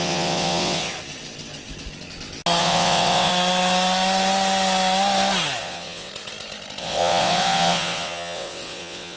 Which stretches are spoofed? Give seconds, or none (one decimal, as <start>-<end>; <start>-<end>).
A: 0.0-0.9; 2.6-3.3; 5.6-6.1; 6.8-9.2